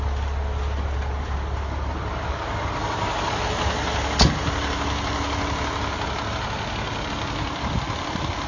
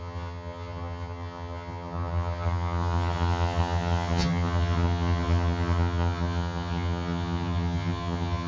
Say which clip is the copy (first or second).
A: second